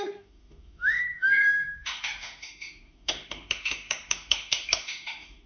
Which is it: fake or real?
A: fake